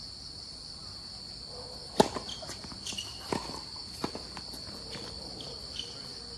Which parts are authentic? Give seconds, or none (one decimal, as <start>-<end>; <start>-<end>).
0.0-6.4